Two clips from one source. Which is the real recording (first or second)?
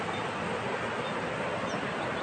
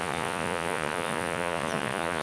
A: first